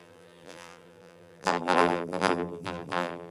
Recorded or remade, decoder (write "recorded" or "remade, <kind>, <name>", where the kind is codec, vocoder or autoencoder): remade, vocoder, BigVGAN v2